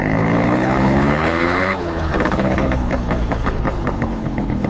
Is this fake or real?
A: fake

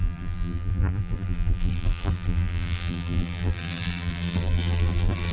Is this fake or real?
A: fake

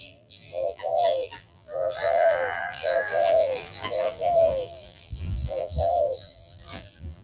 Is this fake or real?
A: fake